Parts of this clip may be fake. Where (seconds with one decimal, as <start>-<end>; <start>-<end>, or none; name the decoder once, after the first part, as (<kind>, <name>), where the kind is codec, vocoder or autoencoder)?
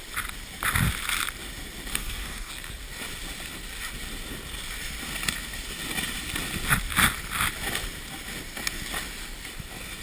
1.9-2.5 (codec, DAC)